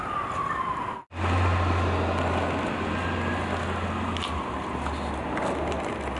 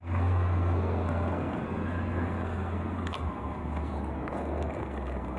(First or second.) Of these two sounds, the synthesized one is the second